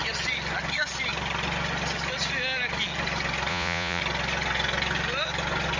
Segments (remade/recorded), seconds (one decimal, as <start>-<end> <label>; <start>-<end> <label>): 0.0-3.5 recorded; 3.5-4.0 remade; 4.0-5.8 recorded